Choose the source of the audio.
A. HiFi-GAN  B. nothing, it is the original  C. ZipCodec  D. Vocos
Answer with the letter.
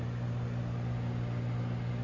B